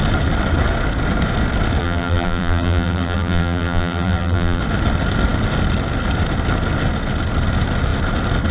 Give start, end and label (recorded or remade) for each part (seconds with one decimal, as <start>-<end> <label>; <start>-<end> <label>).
0.0-1.8 recorded; 1.8-4.6 remade; 4.6-8.5 recorded